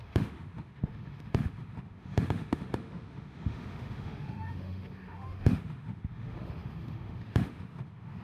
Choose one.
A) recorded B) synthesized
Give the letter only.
B